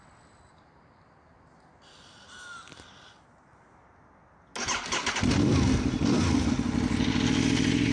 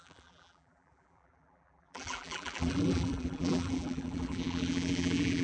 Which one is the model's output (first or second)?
second